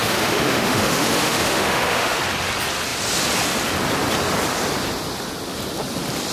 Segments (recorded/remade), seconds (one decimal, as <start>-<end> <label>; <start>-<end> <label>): 0.0-2.2 remade; 2.2-6.3 recorded